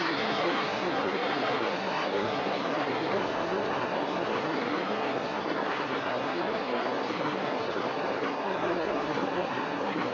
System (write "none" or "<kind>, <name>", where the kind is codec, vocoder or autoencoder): codec, SNAC